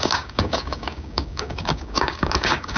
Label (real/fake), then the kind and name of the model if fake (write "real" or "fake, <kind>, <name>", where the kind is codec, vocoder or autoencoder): fake, codec, DAC